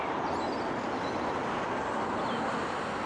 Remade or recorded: recorded